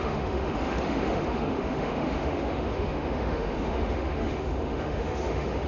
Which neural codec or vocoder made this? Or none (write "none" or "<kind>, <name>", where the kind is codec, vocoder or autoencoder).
autoencoder, DAC-VAE